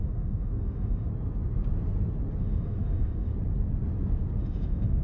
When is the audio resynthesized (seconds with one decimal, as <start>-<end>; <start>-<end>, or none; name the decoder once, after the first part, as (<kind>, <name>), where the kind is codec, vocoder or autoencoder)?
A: 0.0-1.1 (autoencoder, DAC-VAE); 2.4-3.3; 4.4-5.0

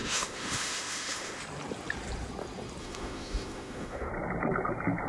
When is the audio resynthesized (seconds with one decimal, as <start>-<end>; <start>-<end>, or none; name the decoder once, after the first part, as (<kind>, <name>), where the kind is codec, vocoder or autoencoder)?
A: 0.0-1.4 (autoencoder, DAC-VAE); 2.8-4.1

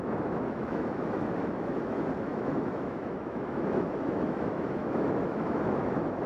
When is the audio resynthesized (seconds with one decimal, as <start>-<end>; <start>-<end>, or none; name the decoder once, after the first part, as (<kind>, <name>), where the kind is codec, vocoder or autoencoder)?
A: 0.0-6.3 (autoencoder, DAC-VAE)

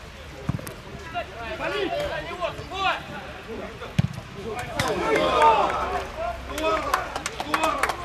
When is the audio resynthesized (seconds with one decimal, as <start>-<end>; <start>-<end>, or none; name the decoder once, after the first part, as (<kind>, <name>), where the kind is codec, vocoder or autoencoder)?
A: 4.4-5.4 (autoencoder, DAC-VAE)

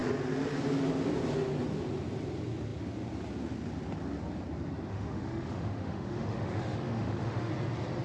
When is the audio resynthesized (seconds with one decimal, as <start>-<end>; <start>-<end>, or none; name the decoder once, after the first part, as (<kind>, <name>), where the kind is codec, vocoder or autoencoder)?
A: 4.9-7.5 (autoencoder, DAC-VAE)

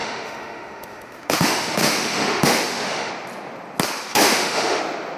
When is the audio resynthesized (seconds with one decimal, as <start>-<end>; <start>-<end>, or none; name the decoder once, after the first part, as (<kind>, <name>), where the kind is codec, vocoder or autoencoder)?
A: 0.0-3.1 (autoencoder, DAC-VAE); 4.1-4.8

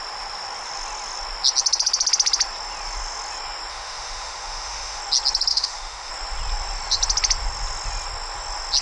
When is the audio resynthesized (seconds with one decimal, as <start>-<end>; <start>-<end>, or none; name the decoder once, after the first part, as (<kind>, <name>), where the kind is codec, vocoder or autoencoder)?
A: 3.7-5.0 (autoencoder, DAC-VAE); 5.5-6.1

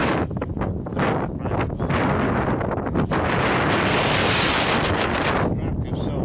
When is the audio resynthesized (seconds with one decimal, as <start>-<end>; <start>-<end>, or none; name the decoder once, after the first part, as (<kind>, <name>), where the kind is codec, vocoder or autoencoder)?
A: 0.0-0.5 (autoencoder, DAC-VAE)